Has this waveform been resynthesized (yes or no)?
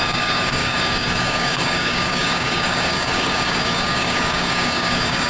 yes